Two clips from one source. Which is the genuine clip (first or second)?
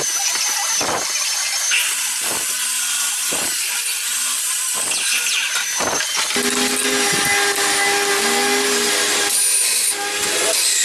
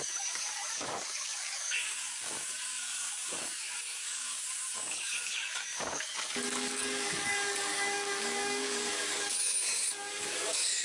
first